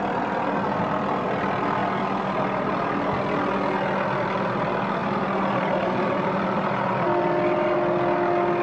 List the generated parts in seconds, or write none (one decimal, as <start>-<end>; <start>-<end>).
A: 5.0-6.9